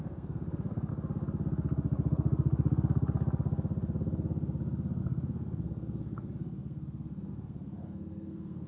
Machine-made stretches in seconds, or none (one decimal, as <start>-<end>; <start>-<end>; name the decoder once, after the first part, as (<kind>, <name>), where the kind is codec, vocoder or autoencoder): 0.0-0.9 (codec, SNAC); 5.0-8.7